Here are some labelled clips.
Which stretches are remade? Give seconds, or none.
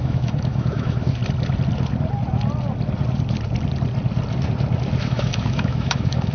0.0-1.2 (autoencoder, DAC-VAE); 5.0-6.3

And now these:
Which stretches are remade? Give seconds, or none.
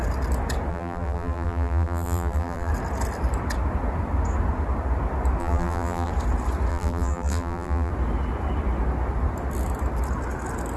0.7-2.7 (vocoder, BigVGAN v2); 5.4-6.1; 6.7-7.9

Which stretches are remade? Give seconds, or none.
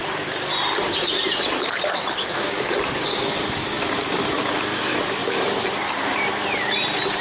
0.0-4.3 (vocoder, BigVGAN v2); 5.2-5.8